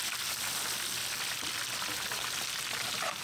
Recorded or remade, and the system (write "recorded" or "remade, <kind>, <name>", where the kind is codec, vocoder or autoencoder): recorded